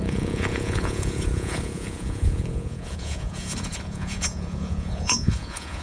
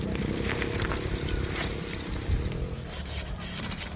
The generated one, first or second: first